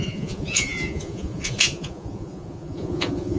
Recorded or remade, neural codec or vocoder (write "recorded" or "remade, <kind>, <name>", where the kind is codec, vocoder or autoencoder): remade, vocoder, Vocos